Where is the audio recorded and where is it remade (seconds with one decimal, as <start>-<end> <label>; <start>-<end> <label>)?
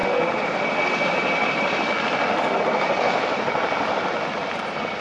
0.0-5.0 recorded